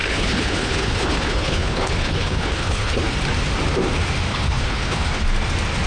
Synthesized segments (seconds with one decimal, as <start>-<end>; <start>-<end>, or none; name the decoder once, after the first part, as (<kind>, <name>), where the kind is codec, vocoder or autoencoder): 0.0-3.0 (codec, HILCodec); 4.3-5.2